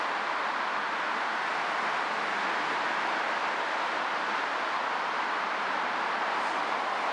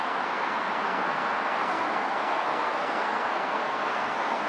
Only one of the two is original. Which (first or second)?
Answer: first